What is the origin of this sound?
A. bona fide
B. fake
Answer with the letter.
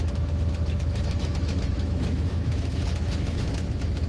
B